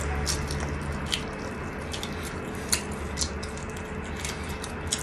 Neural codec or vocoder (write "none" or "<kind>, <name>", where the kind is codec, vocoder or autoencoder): none